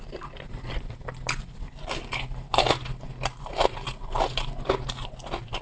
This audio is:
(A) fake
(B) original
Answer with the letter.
B